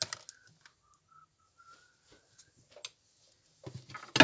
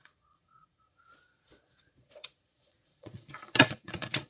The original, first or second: first